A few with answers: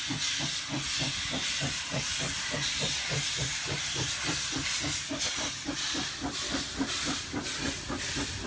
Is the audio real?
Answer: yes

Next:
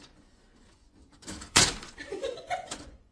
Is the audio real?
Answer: no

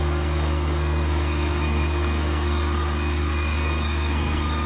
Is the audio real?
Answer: no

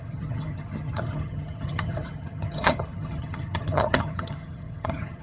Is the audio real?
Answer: no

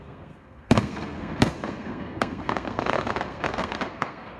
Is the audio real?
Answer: no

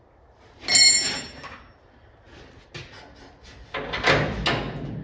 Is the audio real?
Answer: yes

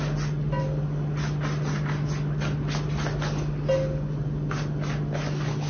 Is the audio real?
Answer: yes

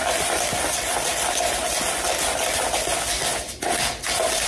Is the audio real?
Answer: yes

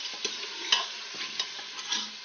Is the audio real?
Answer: yes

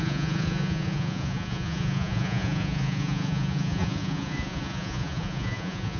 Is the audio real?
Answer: no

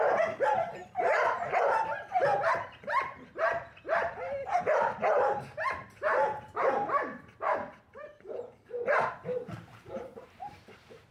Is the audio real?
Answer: no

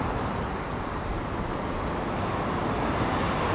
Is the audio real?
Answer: no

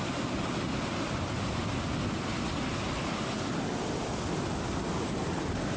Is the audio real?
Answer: yes